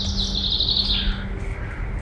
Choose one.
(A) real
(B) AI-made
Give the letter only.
A